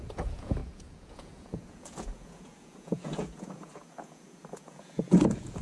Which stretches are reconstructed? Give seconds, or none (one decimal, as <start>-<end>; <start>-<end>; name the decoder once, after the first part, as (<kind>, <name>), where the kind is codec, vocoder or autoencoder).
0.0-5.6 (vocoder, Vocos)